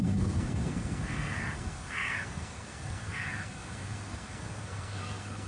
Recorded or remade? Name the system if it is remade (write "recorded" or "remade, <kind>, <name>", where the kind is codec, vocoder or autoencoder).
remade, codec, SNAC